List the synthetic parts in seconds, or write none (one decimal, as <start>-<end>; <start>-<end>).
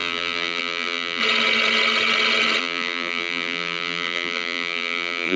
0.0-1.2; 2.6-5.4